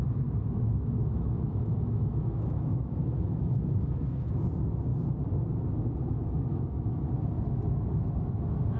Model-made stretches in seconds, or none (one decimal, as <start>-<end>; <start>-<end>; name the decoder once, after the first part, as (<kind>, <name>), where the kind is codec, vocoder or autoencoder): 0.4-4.3 (autoencoder, DAC-VAE); 6.5-7.0